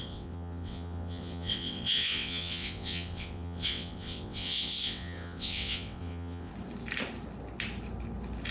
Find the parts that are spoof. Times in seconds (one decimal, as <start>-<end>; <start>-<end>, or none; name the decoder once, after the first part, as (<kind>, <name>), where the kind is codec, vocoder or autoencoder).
0.0-6.5 (vocoder, WaveNeXt)